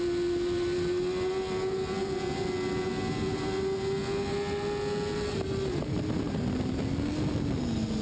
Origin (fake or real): real